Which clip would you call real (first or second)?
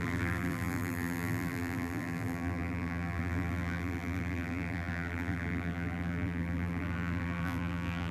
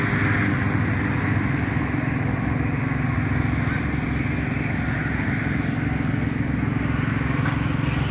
second